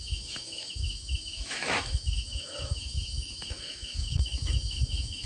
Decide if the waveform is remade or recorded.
remade